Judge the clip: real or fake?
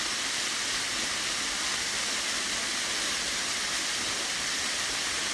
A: real